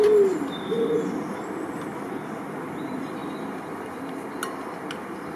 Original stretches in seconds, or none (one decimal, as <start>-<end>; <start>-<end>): 0.0-5.4